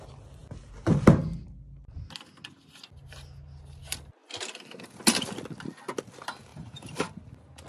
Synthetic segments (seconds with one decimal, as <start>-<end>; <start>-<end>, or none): 6.5-7.1